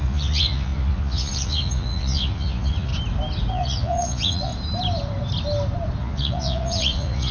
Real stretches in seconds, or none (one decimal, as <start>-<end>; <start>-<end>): 2.9-3.5; 4.5-6.0